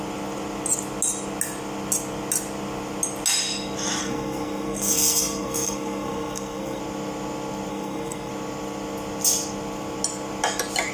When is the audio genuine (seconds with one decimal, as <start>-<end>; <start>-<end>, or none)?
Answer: 0.0-4.0; 6.8-7.7; 8.3-10.9